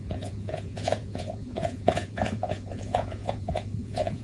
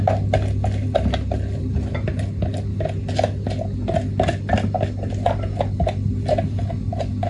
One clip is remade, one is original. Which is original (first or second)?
second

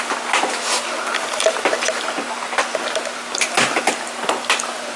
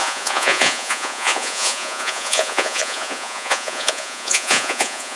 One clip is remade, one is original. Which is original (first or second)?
first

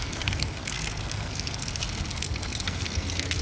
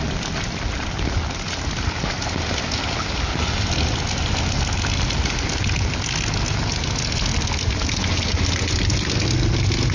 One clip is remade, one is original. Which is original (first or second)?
second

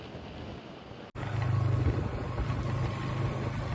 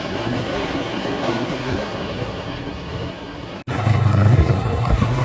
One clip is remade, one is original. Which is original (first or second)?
first